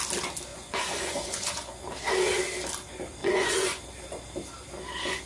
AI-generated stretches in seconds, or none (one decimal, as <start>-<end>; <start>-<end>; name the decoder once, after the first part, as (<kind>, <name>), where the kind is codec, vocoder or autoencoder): 0.5-1.8 (vocoder, Vocos); 3.2-3.8